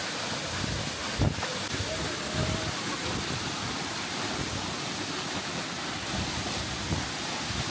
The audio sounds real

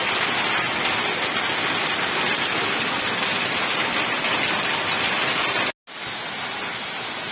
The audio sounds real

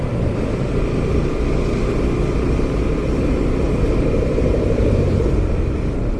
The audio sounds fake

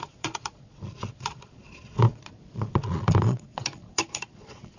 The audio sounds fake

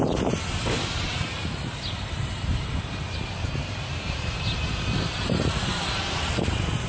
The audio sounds fake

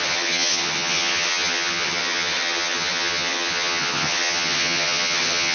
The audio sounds fake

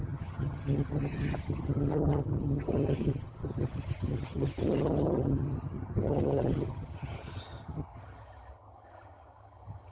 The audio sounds fake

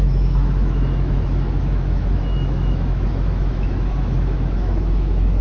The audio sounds fake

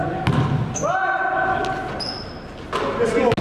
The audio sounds real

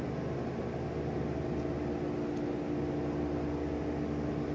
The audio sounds real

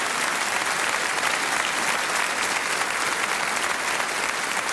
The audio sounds real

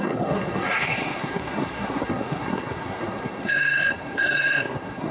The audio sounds fake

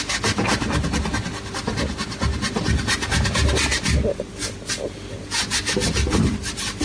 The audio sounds real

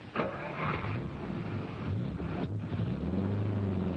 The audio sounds real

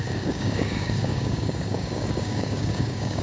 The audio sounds fake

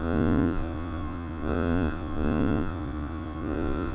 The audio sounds fake